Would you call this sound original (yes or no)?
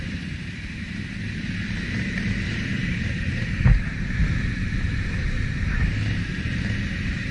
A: no